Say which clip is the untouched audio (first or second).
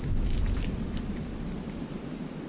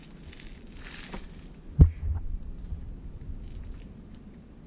second